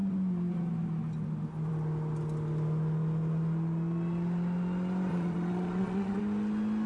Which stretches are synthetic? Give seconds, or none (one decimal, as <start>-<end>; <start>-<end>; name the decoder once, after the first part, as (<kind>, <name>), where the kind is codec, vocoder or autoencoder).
5.1-6.2 (vocoder, Vocos)